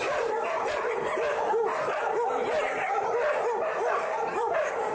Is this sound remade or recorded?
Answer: recorded